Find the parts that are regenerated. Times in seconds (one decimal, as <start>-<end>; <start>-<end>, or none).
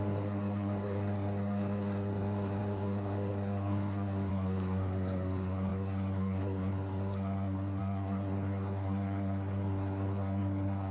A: 0.0-10.9